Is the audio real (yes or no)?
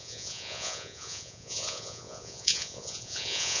no